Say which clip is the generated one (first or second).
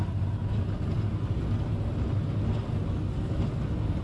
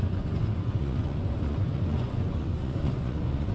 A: second